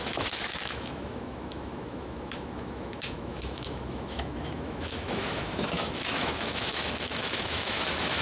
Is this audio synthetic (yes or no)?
yes